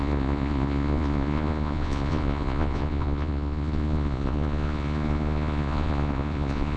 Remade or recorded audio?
remade